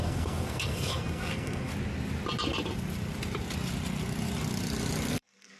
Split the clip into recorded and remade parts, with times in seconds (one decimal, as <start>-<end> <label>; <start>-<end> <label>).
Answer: 0.0-1.7 remade; 1.7-5.1 recorded; 5.1-5.6 remade